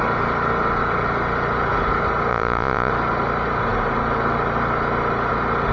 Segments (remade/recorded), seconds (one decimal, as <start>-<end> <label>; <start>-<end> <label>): 0.0-2.3 recorded; 2.3-2.9 remade; 2.9-5.7 recorded